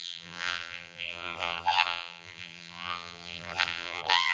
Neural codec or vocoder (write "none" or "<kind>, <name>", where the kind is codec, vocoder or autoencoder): vocoder, BigVGAN v2